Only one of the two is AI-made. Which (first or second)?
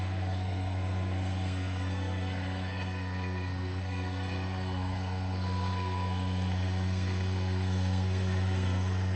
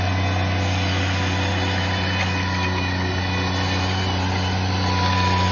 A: first